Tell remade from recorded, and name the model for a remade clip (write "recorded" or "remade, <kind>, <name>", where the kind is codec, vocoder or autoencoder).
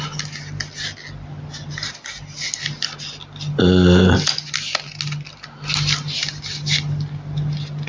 recorded